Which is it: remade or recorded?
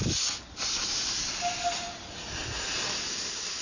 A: recorded